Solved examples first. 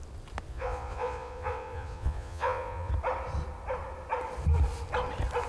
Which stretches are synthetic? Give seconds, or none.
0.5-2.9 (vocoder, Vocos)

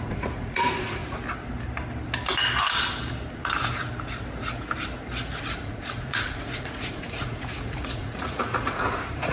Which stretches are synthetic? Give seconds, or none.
0.0-1.0 (vocoder, Vocos); 5.4-9.3

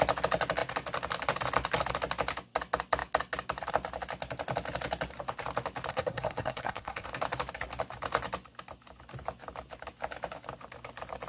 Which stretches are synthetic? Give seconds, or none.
5.9-7.1 (codec, SNAC)

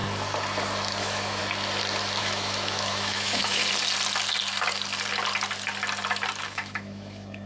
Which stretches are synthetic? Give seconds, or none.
1.0-1.4 (autoencoder, DAC-VAE); 2.2-3.6; 6.4-7.5

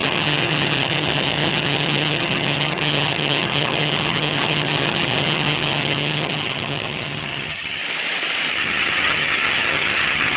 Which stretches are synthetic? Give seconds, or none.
0.0-7.8 (vocoder, HiFi-GAN); 8.5-10.4

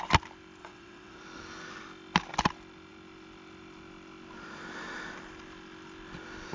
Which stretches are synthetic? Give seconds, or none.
0.6-1.2 (vocoder, WaveNeXt)